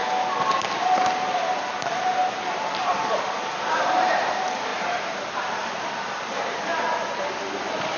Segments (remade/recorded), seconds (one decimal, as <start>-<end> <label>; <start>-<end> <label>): 0.0-2.5 recorded; 2.5-6.7 remade; 6.7-8.0 recorded